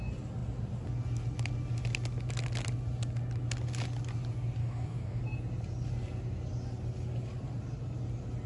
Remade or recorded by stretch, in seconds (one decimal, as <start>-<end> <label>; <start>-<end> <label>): 0.0-4.6 recorded; 4.6-5.2 remade; 5.2-8.5 recorded

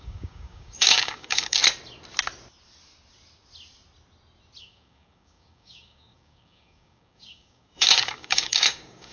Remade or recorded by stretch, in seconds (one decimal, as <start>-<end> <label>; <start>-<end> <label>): 0.0-1.6 remade; 1.6-4.6 recorded; 4.6-9.1 remade

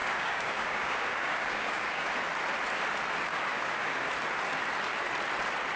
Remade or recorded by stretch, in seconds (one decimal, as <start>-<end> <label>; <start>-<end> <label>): 0.0-2.1 remade; 2.1-3.3 recorded; 3.3-4.1 remade; 4.1-5.8 recorded

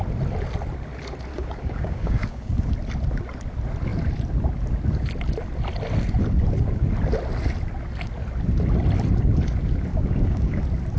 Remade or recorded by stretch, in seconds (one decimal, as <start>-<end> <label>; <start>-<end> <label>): 0.0-1.3 recorded; 1.3-2.7 remade; 2.7-9.9 recorded; 9.9-10.6 remade; 10.6-11.0 recorded

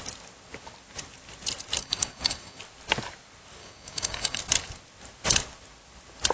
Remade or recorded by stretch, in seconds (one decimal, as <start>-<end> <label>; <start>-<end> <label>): 0.0-1.8 recorded; 1.8-2.6 remade; 2.6-3.6 recorded; 3.6-4.4 remade; 4.4-6.3 recorded

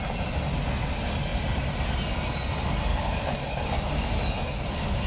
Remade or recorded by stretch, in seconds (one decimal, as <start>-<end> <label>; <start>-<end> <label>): 0.0-2.9 recorded; 2.9-5.1 remade

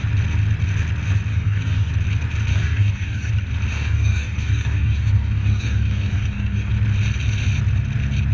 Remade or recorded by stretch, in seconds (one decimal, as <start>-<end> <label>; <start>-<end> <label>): 0.0-1.3 recorded; 1.3-1.9 remade; 1.9-2.5 recorded; 2.5-3.3 remade; 3.3-3.7 recorded; 3.7-6.7 remade; 6.7-8.3 recorded

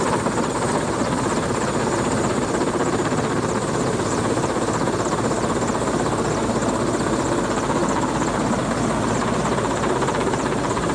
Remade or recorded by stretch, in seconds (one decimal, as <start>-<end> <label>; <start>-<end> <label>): 0.0-10.9 recorded